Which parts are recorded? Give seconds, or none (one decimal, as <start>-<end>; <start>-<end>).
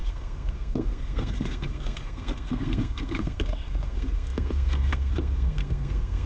none